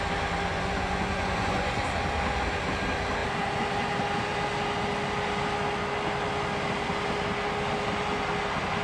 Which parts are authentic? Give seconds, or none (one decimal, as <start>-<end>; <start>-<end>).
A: 0.0-0.5; 1.8-8.8